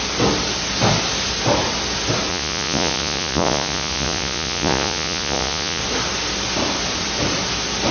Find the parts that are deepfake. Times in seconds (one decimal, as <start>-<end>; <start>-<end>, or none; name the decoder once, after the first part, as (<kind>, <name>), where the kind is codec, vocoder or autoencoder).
2.3-5.8 (vocoder, Vocos)